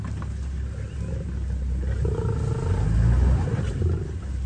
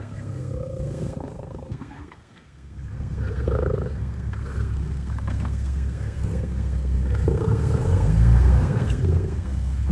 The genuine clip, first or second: first